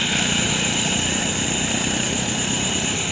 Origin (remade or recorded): remade